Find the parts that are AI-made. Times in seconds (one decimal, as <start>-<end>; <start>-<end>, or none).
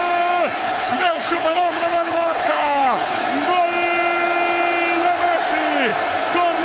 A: 0.6-3.2